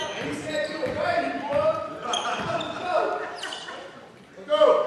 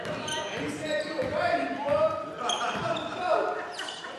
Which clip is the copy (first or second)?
first